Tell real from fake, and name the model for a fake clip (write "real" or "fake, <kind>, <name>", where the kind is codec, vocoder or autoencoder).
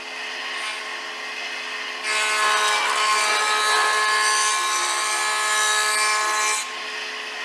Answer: real